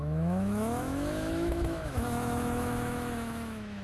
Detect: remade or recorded remade